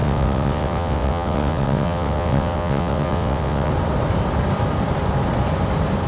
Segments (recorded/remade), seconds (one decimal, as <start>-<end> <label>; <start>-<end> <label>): 0.0-3.7 remade; 3.7-6.1 recorded